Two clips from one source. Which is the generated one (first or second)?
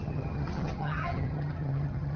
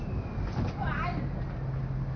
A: first